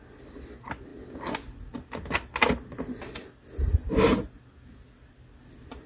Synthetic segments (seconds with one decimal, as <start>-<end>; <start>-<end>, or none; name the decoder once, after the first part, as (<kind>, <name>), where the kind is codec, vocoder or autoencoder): none